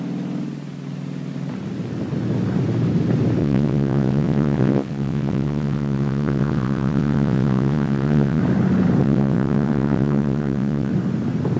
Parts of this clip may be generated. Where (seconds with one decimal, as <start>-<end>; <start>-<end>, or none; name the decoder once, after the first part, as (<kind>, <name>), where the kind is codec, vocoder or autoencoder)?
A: 3.4-8.4 (vocoder, WaveNeXt); 9.0-10.9